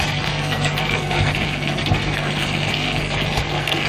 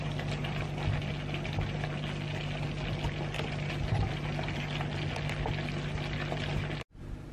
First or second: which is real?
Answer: second